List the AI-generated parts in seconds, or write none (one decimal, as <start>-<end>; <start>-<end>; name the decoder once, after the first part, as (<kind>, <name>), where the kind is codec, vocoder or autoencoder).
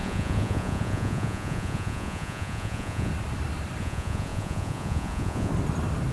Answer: 0.0-3.1 (vocoder, Vocos); 3.8-5.5